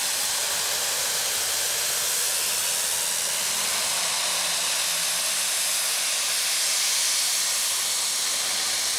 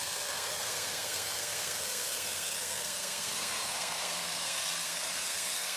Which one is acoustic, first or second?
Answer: first